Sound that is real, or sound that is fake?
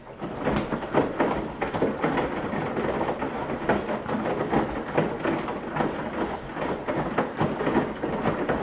real